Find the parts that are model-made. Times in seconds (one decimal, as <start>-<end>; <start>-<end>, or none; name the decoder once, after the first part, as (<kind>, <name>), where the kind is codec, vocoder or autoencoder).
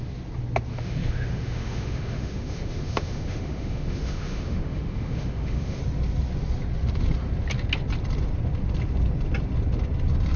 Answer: 0.7-5.8 (autoencoder, DAC-VAE)